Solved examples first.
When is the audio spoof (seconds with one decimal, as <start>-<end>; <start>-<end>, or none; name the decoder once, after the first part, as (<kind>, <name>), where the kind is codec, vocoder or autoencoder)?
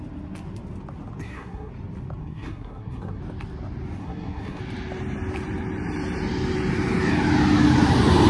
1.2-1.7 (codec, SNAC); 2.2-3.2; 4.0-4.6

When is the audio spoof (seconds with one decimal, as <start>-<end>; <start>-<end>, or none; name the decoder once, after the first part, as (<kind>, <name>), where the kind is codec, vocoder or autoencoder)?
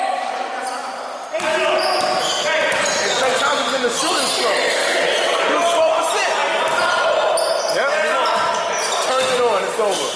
4.8-5.4 (vocoder, WaveNeXt)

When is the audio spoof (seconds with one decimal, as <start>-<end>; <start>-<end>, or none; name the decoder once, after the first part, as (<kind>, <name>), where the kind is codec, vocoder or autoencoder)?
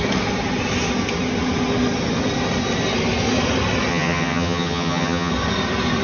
3.9-5.3 (vocoder, HiFi-GAN)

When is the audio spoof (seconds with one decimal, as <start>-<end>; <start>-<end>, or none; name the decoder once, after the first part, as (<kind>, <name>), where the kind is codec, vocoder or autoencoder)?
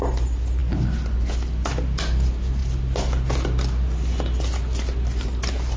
none